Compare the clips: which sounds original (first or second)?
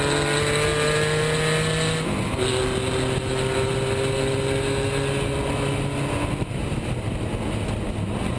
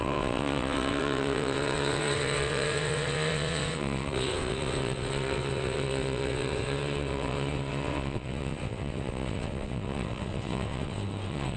first